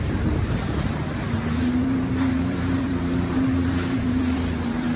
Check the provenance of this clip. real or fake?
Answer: fake